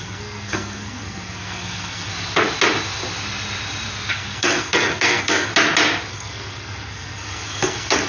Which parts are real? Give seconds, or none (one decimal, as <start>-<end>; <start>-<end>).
2.1-4.1; 5.5-6.1